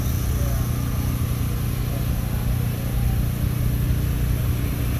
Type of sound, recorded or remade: recorded